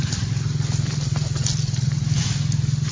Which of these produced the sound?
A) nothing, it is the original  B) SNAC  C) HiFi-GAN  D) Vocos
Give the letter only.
A